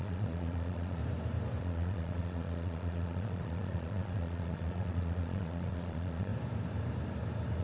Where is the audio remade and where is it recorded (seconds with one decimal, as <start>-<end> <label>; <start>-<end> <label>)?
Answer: 0.0-1.0 remade; 1.0-1.6 recorded; 1.6-6.3 remade; 6.3-7.6 recorded